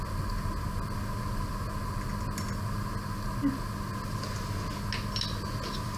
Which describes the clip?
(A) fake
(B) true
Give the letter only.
B